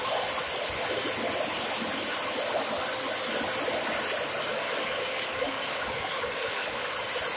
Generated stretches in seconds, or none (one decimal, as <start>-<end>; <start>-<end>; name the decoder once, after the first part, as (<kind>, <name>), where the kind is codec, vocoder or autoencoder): 4.5-6.9 (codec, DAC)